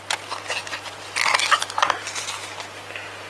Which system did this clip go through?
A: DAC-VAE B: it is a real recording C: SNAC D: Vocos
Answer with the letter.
B